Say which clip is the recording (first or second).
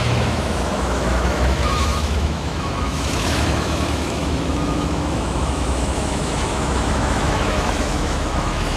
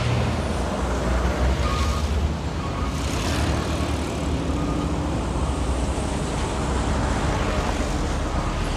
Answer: second